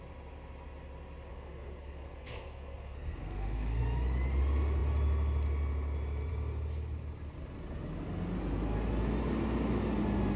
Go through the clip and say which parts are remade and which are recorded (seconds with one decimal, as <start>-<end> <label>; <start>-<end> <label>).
0.0-1.3 recorded; 1.3-3.8 remade; 3.8-10.4 recorded